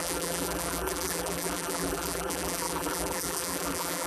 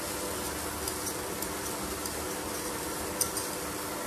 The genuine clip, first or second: second